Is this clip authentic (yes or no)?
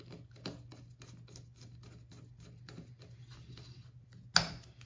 yes